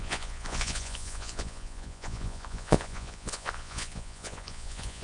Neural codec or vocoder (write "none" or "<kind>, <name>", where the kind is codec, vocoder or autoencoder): vocoder, Vocos